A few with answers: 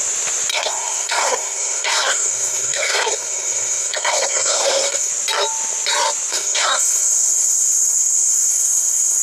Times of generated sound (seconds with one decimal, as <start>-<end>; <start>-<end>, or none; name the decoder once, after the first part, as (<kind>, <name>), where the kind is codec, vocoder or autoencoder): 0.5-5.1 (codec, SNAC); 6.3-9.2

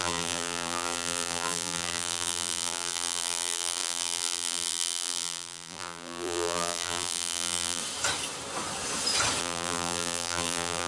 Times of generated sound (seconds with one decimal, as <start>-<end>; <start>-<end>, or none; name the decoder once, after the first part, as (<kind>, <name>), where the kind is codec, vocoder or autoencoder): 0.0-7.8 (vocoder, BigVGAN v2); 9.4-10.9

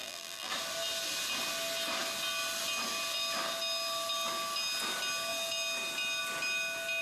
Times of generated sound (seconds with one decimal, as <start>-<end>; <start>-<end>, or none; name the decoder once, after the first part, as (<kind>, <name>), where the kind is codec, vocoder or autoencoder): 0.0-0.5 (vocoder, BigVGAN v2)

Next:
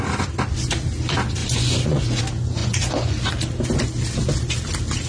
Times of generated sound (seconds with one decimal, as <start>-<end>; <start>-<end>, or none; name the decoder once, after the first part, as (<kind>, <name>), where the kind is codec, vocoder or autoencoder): 1.4-2.2 (vocoder, Vocos); 2.6-3.3

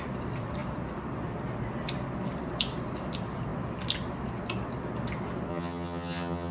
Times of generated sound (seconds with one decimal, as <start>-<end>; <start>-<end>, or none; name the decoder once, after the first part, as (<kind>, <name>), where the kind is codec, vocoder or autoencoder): 5.5-6.5 (vocoder, HiFi-GAN)

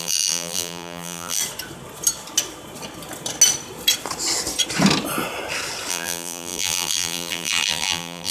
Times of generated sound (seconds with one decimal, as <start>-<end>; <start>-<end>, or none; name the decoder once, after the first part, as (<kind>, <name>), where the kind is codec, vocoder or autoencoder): 0.0-1.4 (vocoder, BigVGAN v2); 5.9-8.3

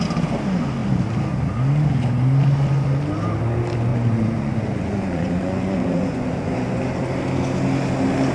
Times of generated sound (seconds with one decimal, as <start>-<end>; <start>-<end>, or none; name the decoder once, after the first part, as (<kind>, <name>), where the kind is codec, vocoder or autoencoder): 3.9-6.8 (vocoder, Vocos)

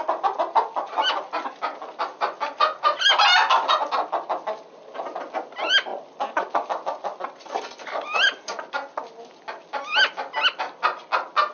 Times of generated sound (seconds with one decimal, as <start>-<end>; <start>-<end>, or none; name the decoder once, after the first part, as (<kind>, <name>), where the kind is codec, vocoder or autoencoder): none